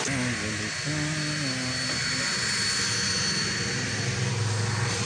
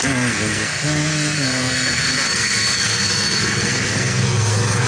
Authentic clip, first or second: first